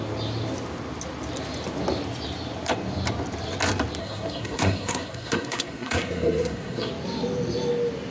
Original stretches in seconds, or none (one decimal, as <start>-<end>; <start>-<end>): 0.0-4.0; 6.9-8.1